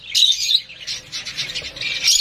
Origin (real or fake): real